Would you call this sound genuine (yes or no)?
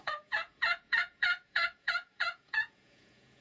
no